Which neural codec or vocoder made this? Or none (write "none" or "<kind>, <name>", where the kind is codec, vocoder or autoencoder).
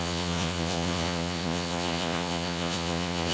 vocoder, Vocos